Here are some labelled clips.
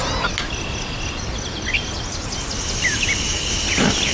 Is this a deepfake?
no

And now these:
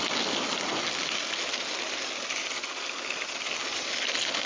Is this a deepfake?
no